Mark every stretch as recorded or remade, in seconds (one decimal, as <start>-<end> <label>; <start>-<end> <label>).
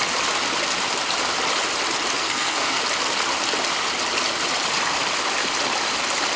0.0-2.2 recorded; 2.2-2.8 remade; 2.8-6.4 recorded